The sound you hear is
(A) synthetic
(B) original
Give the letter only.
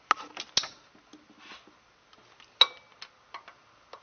B